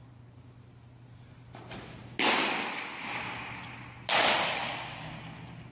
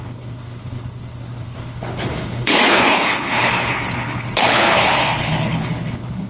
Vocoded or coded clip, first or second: second